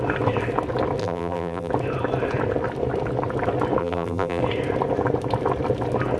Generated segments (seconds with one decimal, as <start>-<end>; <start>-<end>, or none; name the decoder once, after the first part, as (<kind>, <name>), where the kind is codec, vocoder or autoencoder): 1.0-1.7 (vocoder, BigVGAN v2); 3.8-4.4